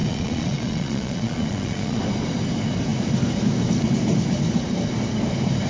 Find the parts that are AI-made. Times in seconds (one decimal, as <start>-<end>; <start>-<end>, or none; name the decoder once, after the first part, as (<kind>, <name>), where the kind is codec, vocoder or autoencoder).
0.0-2.0 (vocoder, Vocos)